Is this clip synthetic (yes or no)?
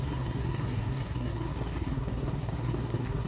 yes